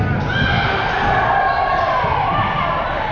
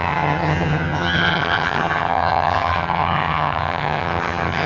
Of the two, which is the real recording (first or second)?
first